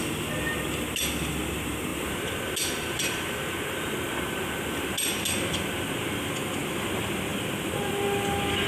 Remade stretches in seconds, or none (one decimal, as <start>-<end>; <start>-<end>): none